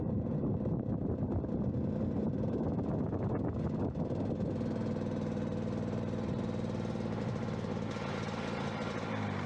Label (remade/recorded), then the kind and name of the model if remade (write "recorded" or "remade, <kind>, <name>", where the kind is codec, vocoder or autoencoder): recorded